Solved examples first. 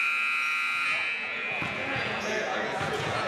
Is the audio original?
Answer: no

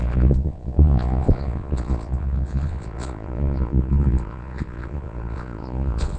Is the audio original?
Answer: no